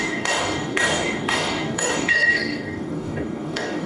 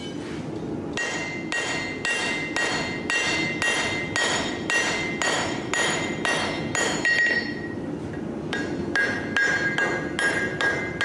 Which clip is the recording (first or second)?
second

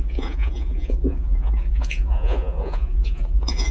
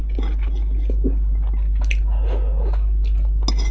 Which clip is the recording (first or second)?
second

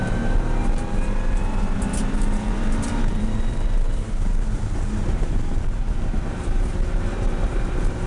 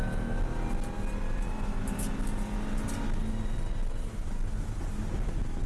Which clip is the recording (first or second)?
second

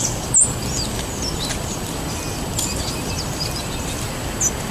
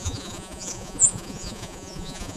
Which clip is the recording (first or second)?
first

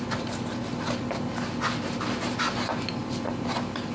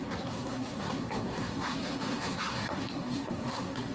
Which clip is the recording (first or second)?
first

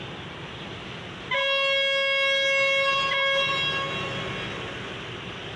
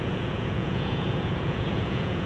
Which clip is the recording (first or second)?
first